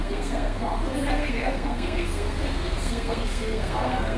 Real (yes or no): no